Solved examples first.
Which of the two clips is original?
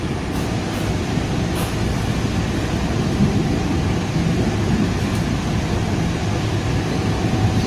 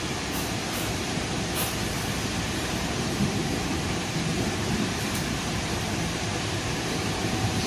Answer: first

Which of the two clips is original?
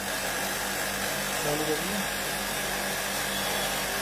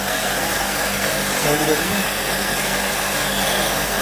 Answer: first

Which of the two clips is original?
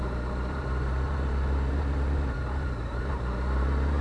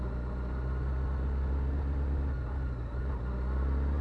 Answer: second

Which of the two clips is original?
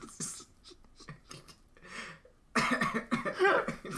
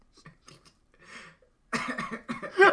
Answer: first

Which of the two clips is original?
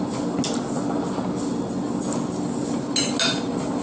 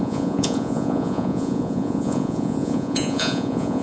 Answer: first